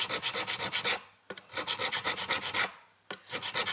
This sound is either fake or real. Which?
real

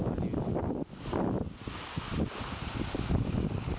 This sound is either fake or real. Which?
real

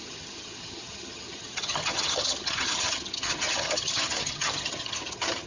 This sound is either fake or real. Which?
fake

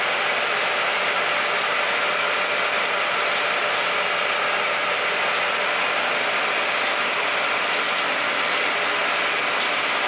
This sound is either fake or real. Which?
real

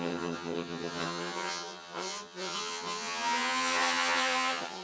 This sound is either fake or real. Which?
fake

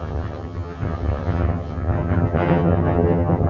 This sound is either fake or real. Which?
fake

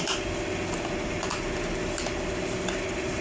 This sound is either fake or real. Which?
real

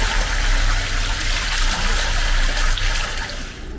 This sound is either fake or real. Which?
real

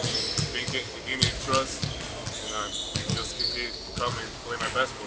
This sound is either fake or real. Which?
real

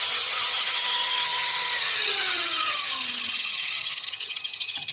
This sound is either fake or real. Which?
fake